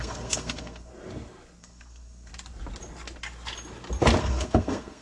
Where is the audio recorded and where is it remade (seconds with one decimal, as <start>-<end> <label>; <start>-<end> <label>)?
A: 0.0-0.9 remade; 0.9-1.6 recorded; 1.6-2.3 remade; 2.3-4.2 recorded; 4.2-5.0 remade